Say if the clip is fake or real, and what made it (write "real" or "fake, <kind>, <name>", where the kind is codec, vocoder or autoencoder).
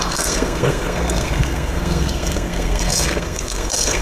fake, codec, SNAC